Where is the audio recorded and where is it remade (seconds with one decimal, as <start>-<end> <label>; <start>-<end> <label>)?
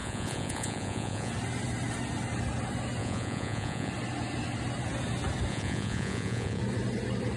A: 0.0-1.3 remade; 1.3-3.0 recorded; 3.0-3.9 remade; 3.9-5.5 recorded; 5.5-6.6 remade; 6.6-7.4 recorded